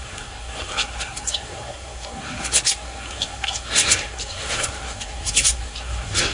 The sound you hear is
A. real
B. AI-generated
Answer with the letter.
B